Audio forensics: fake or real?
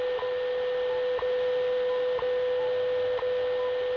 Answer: real